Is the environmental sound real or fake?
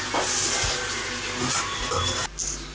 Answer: fake